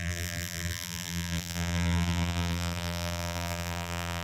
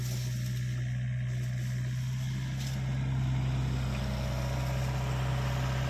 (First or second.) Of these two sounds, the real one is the second